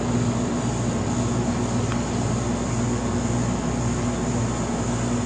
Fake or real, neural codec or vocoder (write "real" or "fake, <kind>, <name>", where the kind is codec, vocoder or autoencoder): real